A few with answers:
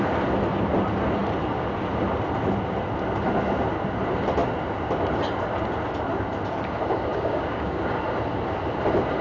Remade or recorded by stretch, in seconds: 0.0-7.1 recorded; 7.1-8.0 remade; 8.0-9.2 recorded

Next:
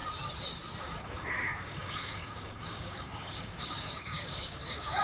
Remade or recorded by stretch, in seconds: 0.0-0.8 recorded; 0.8-5.0 remade

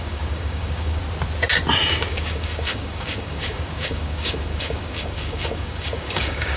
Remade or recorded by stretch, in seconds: 0.0-1.0 remade; 1.0-2.1 recorded; 2.1-6.6 remade